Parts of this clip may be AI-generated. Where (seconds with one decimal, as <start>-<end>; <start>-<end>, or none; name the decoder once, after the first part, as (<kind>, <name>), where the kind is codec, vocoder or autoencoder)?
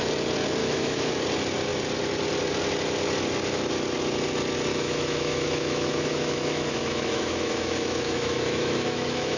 0.6-1.1 (autoencoder, DAC-VAE); 4.7-9.4